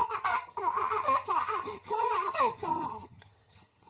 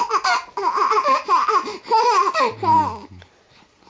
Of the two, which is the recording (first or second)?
second